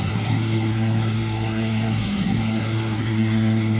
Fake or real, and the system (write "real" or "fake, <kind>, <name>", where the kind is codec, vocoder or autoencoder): fake, codec, SNAC